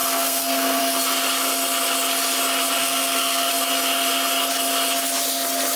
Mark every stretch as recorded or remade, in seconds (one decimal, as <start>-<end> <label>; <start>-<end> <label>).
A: 0.0-0.8 remade; 0.8-2.8 recorded; 2.8-3.5 remade; 3.5-5.8 recorded